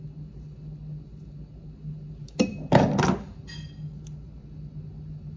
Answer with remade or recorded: recorded